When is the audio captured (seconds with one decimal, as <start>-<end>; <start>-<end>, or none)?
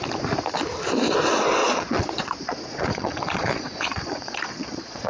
0.0-1.6